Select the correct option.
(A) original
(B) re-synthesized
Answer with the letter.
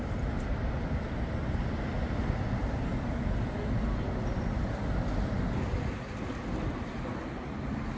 A